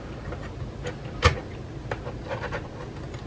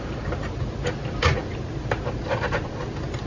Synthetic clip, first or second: second